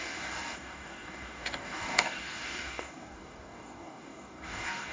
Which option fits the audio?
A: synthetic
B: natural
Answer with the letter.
A